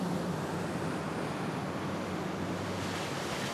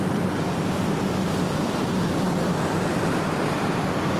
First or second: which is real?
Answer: first